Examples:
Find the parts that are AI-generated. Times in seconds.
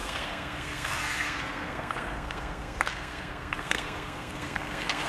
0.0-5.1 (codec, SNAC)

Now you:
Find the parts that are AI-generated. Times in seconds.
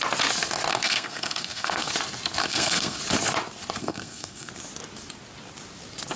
0.7-1.9 (codec, SNAC); 2.4-3.0; 3.8-4.5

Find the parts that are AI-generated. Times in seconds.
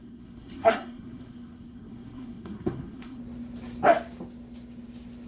0.0-3.2 (codec, SNAC)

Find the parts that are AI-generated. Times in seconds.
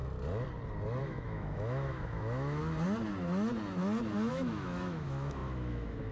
1.0-2.6 (autoencoder, DAC-VAE); 4.3-6.1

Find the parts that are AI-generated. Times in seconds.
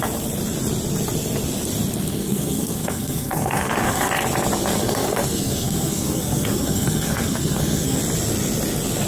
2.1-4.1 (codec, SNAC); 4.7-8.0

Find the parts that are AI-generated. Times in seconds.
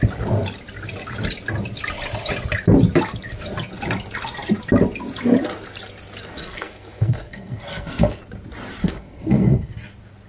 6.4-8.2 (codec, SNAC); 8.8-9.7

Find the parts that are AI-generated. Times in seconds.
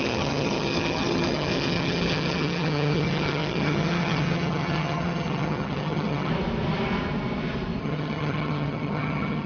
0.0-6.3 (vocoder, HiFi-GAN); 7.8-9.5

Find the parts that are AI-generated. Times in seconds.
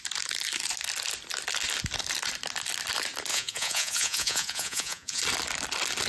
3.3-5.2 (vocoder, Vocos)